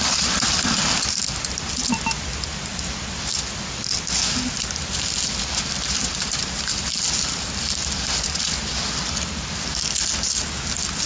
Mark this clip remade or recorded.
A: recorded